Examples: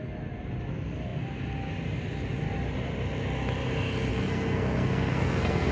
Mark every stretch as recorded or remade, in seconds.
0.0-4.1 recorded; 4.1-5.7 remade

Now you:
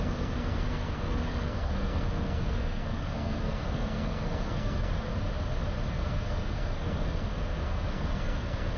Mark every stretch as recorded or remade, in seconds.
0.0-5.1 remade; 5.1-5.9 recorded; 5.9-8.8 remade

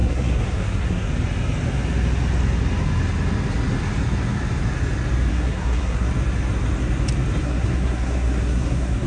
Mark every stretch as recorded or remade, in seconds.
0.0-1.1 remade; 1.1-5.3 recorded; 5.3-6.1 remade; 6.1-7.4 recorded; 7.4-9.1 remade